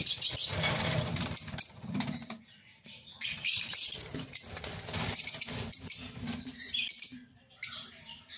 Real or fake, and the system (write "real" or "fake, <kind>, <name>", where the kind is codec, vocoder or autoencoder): fake, vocoder, BigVGAN v2